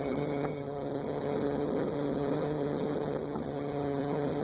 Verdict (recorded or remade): remade